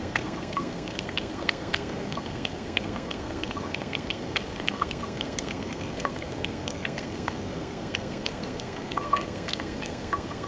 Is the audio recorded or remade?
remade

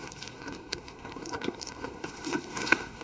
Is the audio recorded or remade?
remade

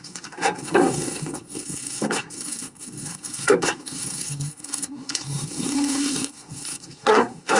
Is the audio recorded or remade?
remade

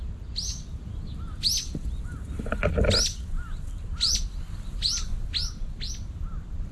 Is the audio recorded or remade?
recorded